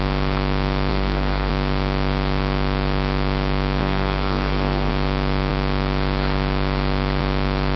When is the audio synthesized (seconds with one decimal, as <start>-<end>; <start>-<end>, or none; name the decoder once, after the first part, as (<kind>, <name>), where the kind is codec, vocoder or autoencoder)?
0.9-1.5 (codec, SNAC); 3.8-4.9